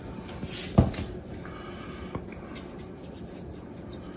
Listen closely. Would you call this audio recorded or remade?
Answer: recorded